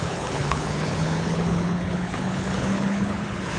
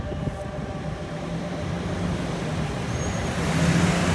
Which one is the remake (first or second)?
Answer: first